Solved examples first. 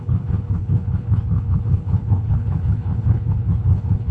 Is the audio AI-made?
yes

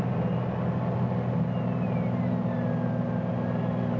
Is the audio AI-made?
no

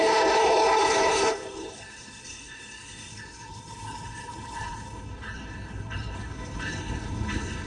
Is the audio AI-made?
yes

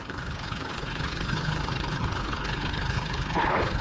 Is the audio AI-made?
yes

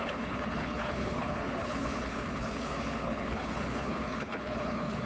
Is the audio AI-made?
yes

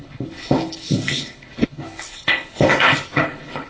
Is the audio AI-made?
yes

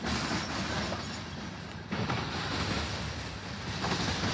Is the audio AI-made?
no